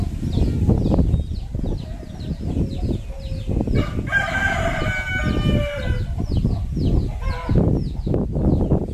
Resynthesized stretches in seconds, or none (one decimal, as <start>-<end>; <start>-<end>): none